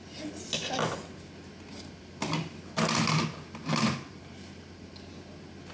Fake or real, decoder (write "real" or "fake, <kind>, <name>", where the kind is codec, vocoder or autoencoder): real